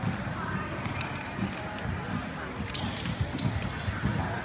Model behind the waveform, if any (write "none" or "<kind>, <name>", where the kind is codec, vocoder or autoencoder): none